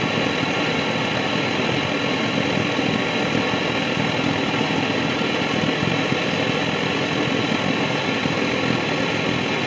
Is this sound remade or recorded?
recorded